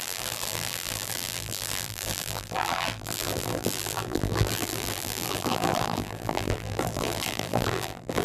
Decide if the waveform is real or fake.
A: fake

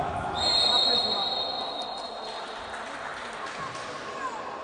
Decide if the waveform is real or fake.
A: real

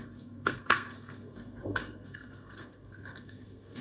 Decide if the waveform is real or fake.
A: fake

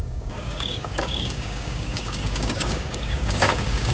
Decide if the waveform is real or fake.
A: fake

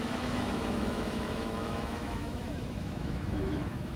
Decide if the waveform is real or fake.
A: fake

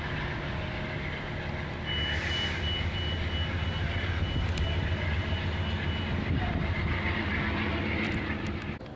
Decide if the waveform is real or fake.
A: real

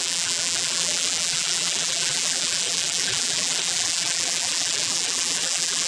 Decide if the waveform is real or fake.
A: fake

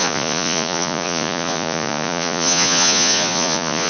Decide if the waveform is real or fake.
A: fake